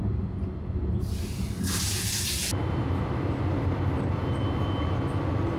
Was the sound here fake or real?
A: fake